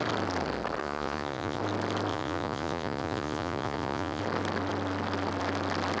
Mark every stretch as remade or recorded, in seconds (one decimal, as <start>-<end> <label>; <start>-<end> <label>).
0.0-0.8 recorded; 0.8-1.6 remade; 1.6-2.1 recorded; 2.1-4.2 remade; 4.2-6.0 recorded